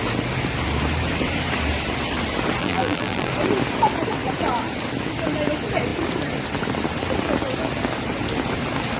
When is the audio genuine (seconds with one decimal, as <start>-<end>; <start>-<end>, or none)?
0.0-2.6; 3.3-9.0

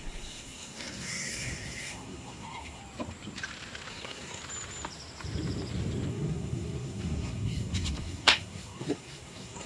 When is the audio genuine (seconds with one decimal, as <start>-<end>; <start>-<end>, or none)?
2.8-3.9; 4.4-6.1

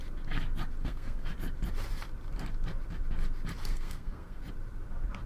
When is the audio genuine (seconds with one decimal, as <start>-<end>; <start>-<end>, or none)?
0.0-0.8; 1.3-3.7; 4.4-5.3

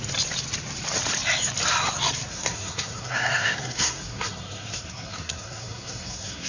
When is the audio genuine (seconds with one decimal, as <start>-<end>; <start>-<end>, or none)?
0.0-2.3

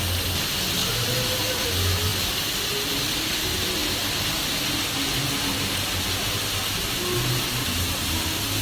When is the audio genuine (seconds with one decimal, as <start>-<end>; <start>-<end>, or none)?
0.0-8.6

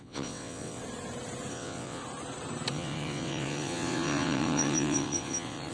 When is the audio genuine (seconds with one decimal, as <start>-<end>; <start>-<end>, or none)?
0.8-1.5; 2.0-2.7

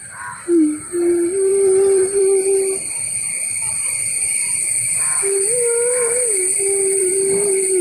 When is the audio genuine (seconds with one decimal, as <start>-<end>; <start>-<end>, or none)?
0.0-1.5; 2.2-6.5; 7.1-7.8